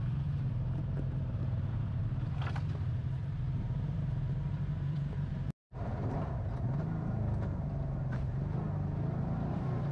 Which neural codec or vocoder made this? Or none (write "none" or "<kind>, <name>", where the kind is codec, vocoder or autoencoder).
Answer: vocoder, BigVGAN v2